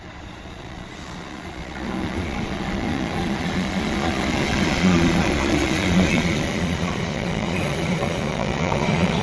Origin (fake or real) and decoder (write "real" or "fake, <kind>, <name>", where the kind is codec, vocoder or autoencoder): fake, vocoder, Vocos